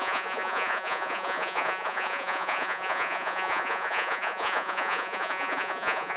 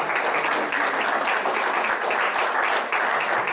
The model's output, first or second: first